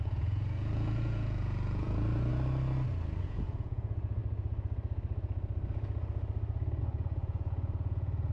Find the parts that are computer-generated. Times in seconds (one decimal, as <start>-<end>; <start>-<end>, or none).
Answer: 0.0-2.3; 3.2-4.2; 6.8-8.3